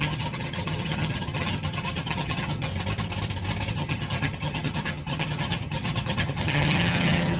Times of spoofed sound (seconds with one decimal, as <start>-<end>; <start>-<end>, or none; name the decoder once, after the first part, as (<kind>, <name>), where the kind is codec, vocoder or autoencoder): 0.0-2.7 (vocoder, HiFi-GAN); 3.7-7.4